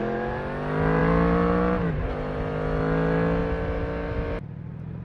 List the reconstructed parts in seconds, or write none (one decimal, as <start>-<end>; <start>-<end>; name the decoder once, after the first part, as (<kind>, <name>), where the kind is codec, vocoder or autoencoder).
none